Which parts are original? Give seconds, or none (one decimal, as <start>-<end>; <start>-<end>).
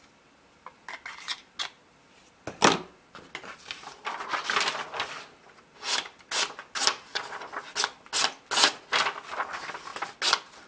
0.0-10.7